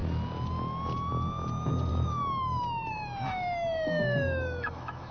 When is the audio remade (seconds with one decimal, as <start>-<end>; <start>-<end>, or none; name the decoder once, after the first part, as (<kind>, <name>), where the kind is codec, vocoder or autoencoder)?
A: 1.9-5.1 (autoencoder, DAC-VAE)